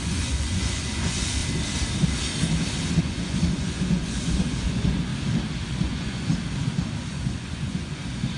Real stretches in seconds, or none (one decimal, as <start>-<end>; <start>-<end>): 1.4-3.0; 5.1-5.7; 6.3-7.0